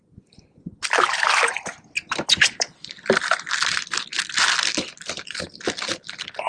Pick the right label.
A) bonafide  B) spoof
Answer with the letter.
A